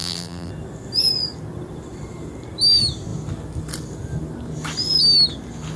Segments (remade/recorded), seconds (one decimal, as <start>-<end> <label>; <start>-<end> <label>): 0.0-0.5 remade; 0.5-5.8 recorded